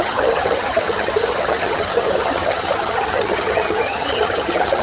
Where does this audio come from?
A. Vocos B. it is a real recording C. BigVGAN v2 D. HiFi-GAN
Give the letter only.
D